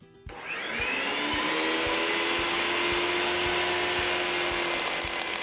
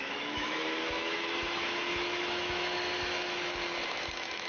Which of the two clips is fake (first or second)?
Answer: second